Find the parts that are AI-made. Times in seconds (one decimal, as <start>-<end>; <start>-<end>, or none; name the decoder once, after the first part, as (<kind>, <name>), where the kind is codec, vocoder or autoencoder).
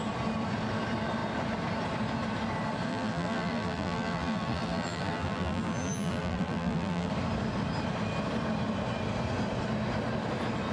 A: 2.9-7.1 (vocoder, BigVGAN v2)